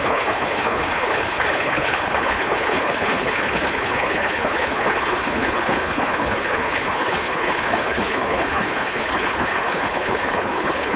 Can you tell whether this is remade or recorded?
remade